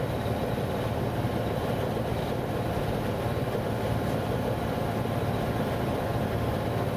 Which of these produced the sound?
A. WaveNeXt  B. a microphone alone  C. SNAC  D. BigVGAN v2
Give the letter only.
B